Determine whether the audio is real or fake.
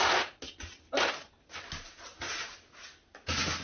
real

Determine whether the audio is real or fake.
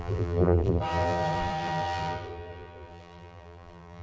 fake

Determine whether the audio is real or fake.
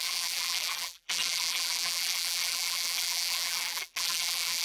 fake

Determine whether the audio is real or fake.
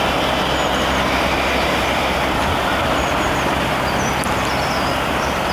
real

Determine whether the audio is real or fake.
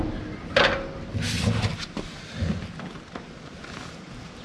real